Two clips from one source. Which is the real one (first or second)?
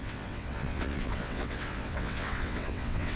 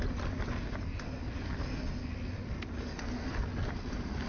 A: second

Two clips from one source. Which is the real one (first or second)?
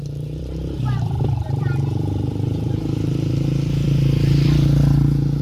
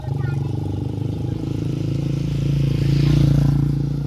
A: second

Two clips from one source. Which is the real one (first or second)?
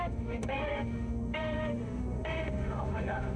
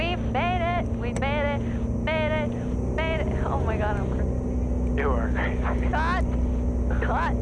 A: second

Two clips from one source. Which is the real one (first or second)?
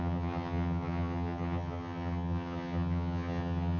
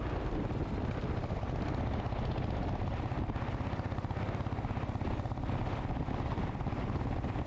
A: second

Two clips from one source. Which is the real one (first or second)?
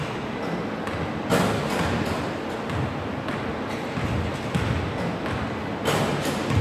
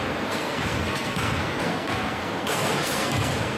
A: first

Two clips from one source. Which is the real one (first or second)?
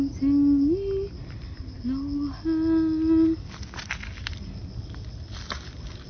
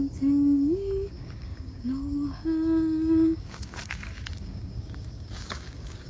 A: first